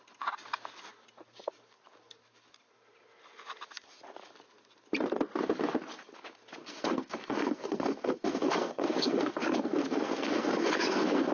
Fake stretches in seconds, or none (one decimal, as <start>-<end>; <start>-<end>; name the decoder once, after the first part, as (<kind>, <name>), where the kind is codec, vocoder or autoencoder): 6.6-11.3 (codec, SNAC)